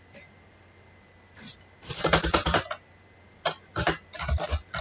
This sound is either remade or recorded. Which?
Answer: recorded